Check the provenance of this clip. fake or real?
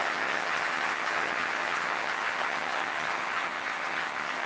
fake